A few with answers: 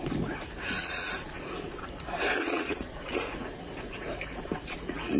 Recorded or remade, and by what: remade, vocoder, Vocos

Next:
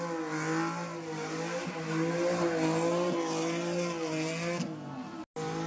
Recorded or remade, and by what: recorded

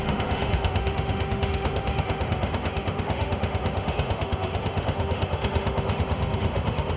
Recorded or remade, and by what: remade, autoencoder, DAC-VAE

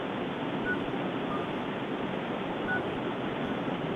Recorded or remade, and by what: recorded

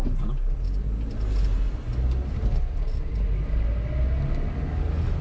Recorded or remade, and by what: recorded